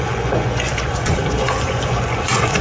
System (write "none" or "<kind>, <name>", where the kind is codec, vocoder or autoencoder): vocoder, Vocos